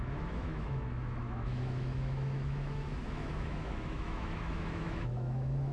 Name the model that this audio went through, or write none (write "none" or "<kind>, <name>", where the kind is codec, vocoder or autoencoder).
autoencoder, DAC-VAE